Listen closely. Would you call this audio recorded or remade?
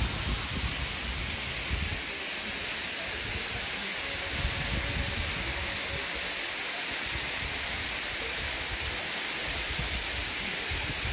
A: recorded